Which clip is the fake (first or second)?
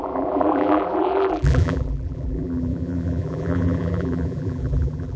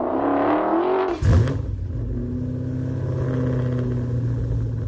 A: first